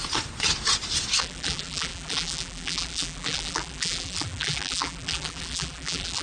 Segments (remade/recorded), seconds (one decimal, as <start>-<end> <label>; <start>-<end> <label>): 0.0-1.2 recorded; 1.2-6.2 remade